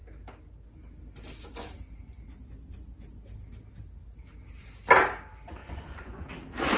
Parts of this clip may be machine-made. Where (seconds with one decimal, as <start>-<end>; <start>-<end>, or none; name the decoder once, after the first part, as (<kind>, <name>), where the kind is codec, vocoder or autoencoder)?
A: 5.6-6.3 (vocoder, Vocos)